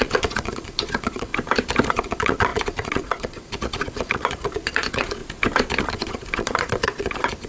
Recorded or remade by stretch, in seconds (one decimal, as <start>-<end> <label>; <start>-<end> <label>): 0.0-1.3 remade; 1.3-1.9 recorded; 1.9-5.2 remade; 5.2-5.8 recorded; 5.8-7.5 remade